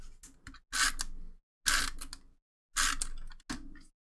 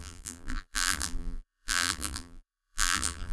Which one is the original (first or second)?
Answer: first